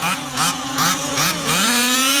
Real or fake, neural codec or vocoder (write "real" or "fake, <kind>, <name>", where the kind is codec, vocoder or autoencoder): fake, vocoder, Vocos